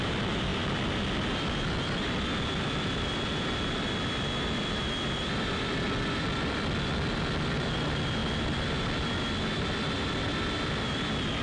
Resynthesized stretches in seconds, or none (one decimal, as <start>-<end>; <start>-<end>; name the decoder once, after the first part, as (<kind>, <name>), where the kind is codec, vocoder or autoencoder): 0.0-11.4 (vocoder, BigVGAN v2)